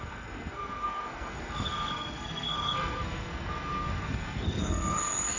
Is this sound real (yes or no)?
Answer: no